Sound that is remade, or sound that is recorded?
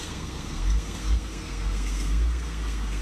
remade